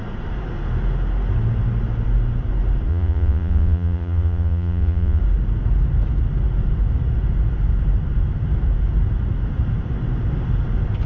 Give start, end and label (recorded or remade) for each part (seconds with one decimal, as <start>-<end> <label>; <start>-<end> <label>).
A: 0.0-2.9 recorded; 2.9-5.2 remade; 5.2-11.1 recorded